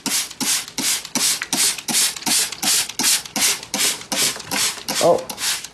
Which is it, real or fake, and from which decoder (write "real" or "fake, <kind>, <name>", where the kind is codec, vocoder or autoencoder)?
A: real